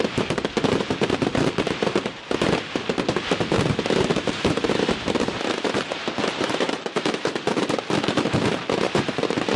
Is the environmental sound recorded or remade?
remade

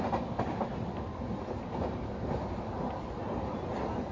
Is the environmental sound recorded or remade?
recorded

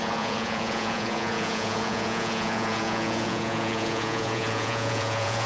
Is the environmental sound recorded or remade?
remade